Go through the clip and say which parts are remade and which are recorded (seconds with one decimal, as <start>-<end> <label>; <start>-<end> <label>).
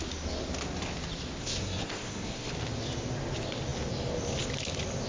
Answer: 0.0-1.4 recorded; 1.4-2.5 remade; 2.5-5.1 recorded